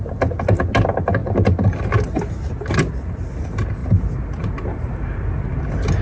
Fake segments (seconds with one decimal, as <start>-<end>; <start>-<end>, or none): 3.8-5.6